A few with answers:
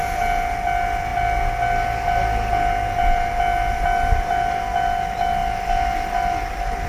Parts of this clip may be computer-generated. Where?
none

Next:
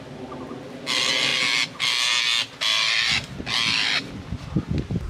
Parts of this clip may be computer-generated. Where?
none

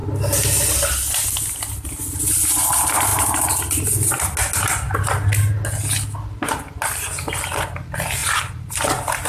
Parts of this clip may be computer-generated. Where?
8.2-9.3 (vocoder, BigVGAN v2)

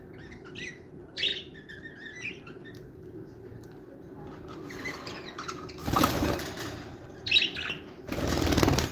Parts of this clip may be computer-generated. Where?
5.8-7.0 (vocoder, BigVGAN v2)